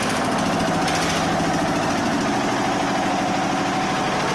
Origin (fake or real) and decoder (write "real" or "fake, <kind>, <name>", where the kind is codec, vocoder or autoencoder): real